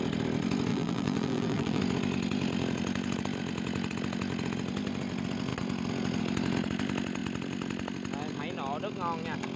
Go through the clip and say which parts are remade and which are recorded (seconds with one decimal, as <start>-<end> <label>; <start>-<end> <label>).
0.0-0.7 recorded; 0.7-1.8 remade; 1.8-9.6 recorded